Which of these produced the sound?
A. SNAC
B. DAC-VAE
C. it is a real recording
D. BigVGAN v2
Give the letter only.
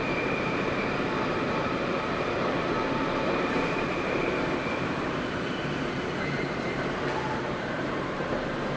D